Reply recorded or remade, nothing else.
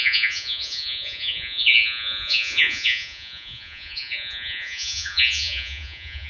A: remade